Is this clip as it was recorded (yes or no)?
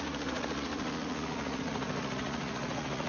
no